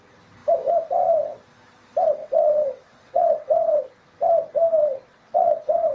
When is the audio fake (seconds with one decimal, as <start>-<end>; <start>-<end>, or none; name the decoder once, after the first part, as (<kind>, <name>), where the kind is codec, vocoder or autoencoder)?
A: 2.2-3.8 (vocoder, WaveNeXt); 4.8-5.9